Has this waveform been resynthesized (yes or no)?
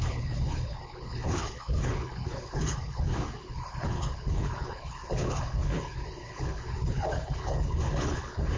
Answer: yes